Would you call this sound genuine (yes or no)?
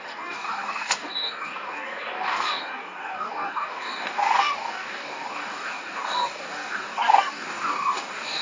no